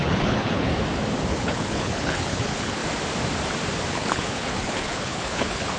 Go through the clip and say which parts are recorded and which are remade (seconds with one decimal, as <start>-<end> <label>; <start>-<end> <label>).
0.0-0.7 remade; 0.7-1.3 recorded; 1.3-2.8 remade; 2.8-3.9 recorded; 3.9-5.8 remade